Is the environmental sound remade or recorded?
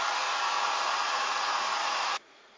remade